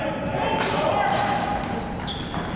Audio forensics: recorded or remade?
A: recorded